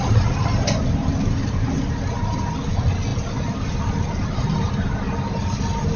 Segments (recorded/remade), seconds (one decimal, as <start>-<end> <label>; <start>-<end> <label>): 0.0-6.0 recorded

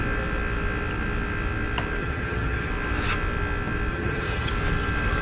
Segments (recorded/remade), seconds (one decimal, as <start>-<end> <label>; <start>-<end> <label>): 0.0-2.0 recorded; 2.0-2.7 remade; 2.7-3.9 recorded; 3.9-4.5 remade; 4.5-5.2 recorded

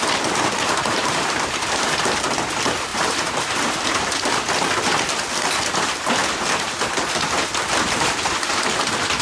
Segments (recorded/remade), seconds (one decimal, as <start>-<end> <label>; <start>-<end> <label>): 0.0-1.0 recorded; 1.0-2.0 remade; 2.0-2.9 recorded; 2.9-4.0 remade; 4.0-9.2 recorded

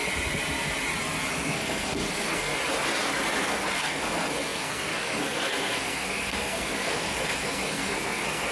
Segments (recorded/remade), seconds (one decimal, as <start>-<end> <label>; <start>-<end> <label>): 0.0-1.3 recorded; 1.3-2.5 remade; 2.5-3.4 recorded; 3.4-8.5 remade

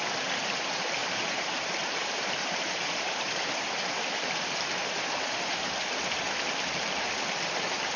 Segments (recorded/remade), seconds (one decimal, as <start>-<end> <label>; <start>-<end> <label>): 0.0-1.0 recorded; 1.0-5.7 remade; 5.7-8.0 recorded

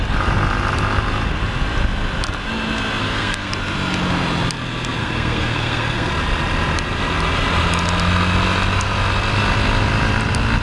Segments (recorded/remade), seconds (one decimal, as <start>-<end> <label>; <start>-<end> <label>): 0.0-3.0 recorded; 3.0-3.5 remade; 3.5-5.0 recorded; 5.0-6.1 remade; 6.1-10.6 recorded

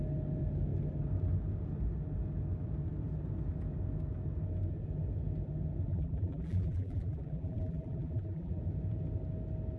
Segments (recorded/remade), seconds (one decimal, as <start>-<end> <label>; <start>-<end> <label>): 0.0-5.9 recorded; 5.9-8.6 remade; 8.6-9.8 recorded